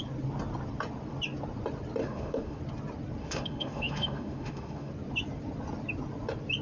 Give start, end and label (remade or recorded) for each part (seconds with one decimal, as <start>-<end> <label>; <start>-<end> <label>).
0.0-2.0 recorded; 2.0-2.6 remade; 2.6-3.2 recorded; 3.2-4.9 remade; 4.9-6.6 recorded

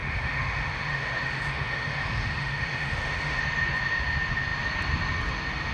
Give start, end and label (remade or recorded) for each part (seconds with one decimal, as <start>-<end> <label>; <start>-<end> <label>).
0.0-3.4 remade; 3.4-5.7 recorded

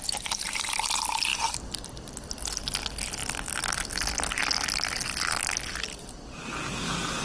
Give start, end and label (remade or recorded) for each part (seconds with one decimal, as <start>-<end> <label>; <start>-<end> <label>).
0.0-7.2 recorded

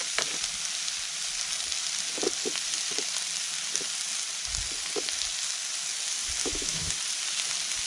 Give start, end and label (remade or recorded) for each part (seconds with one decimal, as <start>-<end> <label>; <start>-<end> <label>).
0.0-6.4 recorded; 6.4-6.9 remade; 6.9-7.9 recorded

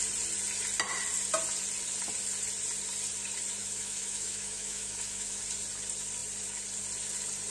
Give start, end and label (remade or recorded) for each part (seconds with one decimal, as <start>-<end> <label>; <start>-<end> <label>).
0.0-3.6 recorded; 3.6-5.4 remade; 5.4-7.5 recorded

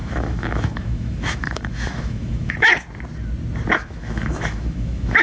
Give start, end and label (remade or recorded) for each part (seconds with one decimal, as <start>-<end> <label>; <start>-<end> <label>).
0.0-2.7 remade; 2.7-3.7 recorded; 3.7-5.2 remade

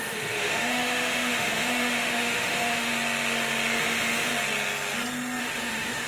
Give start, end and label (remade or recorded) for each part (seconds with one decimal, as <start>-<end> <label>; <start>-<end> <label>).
0.0-2.9 remade; 2.9-3.8 recorded; 3.8-4.3 remade; 4.3-5.4 recorded; 5.4-6.1 remade

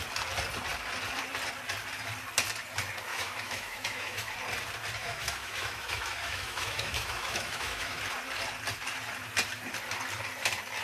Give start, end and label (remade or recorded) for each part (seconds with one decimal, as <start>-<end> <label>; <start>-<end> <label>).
0.0-3.1 recorded; 3.1-4.3 remade; 4.3-5.0 recorded; 5.0-8.0 remade; 8.0-10.8 recorded